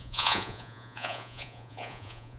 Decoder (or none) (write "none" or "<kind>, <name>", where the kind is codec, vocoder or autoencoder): vocoder, Vocos